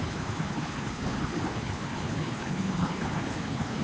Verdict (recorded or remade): remade